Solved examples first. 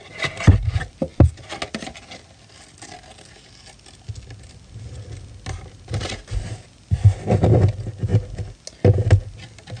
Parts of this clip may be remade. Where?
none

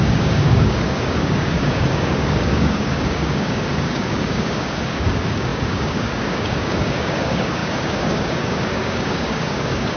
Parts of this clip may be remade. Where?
0.0-10.0 (codec, DAC)

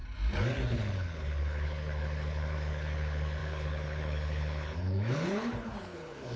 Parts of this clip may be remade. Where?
0.7-6.4 (codec, HILCodec)

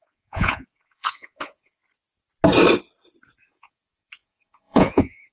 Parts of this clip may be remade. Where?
0.0-1.8 (vocoder, Vocos); 3.5-5.3

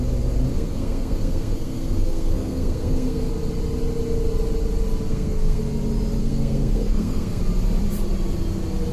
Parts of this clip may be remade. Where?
0.5-3.3 (codec, SNAC); 5.1-5.6; 6.2-7.4

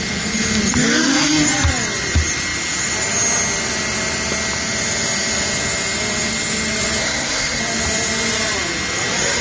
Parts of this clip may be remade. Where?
7.0-7.6 (codec, SNAC)